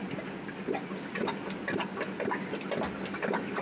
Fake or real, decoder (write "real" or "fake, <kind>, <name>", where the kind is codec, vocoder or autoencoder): real